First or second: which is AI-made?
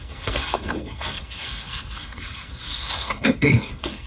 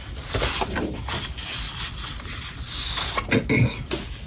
first